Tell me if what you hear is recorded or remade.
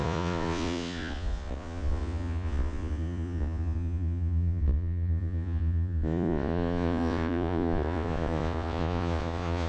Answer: remade